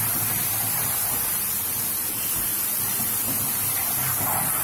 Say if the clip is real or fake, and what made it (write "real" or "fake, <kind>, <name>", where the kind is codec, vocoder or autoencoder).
real